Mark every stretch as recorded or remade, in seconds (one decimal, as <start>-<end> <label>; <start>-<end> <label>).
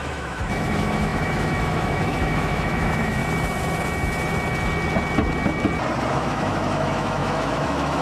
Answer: 0.0-3.2 remade; 3.2-6.1 recorded; 6.1-8.0 remade